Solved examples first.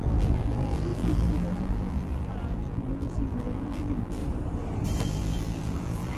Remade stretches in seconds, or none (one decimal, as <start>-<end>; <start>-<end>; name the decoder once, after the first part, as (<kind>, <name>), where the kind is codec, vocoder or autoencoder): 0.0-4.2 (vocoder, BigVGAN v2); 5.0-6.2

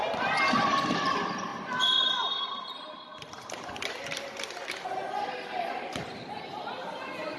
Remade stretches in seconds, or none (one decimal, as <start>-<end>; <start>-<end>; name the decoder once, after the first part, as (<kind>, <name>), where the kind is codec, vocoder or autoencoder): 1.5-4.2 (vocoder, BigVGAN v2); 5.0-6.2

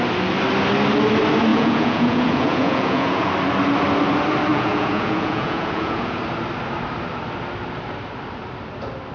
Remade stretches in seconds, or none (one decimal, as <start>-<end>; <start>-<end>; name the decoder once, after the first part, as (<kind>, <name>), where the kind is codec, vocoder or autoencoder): 1.5-3.3 (vocoder, Vocos); 4.5-6.2

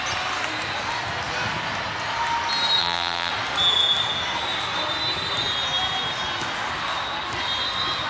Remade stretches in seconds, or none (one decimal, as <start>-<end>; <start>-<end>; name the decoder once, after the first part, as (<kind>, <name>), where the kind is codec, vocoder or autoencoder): 2.8-3.3 (vocoder, BigVGAN v2)

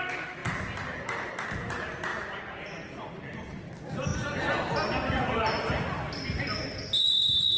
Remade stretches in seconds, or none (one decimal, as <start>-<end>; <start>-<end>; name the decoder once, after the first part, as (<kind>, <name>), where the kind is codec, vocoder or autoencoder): none